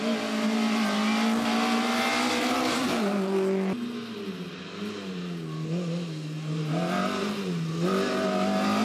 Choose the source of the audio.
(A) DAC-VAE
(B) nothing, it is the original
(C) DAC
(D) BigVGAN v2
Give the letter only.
B